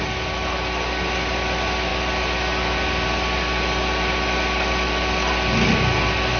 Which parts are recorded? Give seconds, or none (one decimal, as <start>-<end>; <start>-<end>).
0.0-6.4